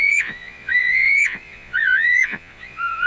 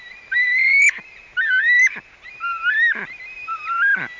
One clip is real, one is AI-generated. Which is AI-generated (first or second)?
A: first